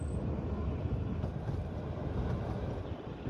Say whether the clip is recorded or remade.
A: recorded